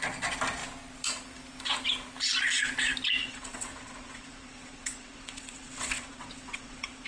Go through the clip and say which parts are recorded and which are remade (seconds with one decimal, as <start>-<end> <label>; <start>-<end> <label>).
0.0-3.2 recorded; 3.2-7.1 remade